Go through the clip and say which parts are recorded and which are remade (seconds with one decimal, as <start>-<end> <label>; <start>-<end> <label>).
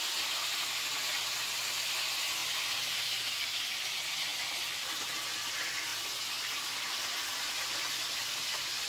0.0-8.9 remade